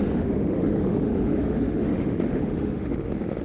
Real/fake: fake